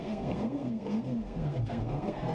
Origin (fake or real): fake